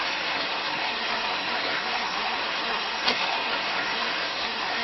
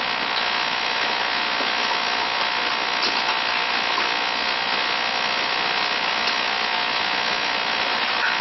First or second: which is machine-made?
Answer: first